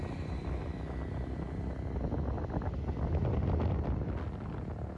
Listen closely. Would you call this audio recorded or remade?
recorded